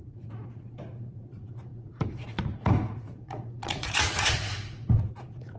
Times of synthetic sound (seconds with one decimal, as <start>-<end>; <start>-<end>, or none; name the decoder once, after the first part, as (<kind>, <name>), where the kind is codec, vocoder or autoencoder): 0.0-5.6 (vocoder, Vocos)